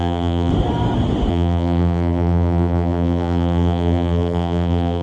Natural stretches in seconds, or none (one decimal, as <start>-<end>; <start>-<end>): 0.5-1.3